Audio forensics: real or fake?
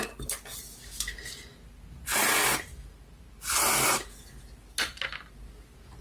real